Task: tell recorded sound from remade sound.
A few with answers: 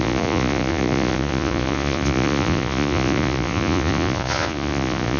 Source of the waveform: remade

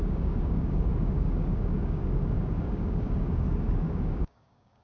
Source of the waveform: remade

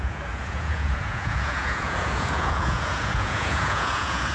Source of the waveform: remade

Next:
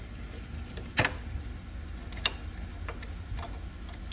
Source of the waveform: recorded